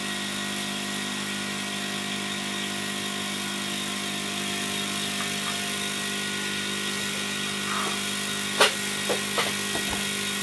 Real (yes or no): yes